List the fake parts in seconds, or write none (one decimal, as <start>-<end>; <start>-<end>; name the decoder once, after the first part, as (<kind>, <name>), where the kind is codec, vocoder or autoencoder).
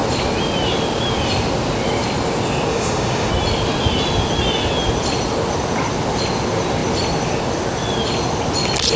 2.7-3.3 (autoencoder, DAC-VAE)